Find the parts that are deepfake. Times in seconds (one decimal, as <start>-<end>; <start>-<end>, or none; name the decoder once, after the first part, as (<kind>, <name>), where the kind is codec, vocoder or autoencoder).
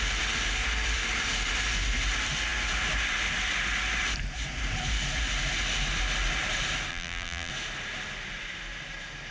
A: 6.9-7.5 (vocoder, BigVGAN v2)